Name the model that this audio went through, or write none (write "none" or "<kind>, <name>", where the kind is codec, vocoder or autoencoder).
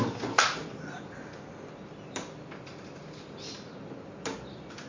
none